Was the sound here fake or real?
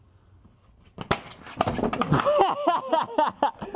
real